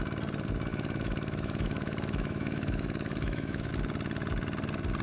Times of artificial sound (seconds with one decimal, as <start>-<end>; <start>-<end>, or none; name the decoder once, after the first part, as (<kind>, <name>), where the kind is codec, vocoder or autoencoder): 0.7-3.7 (autoencoder, DAC-VAE)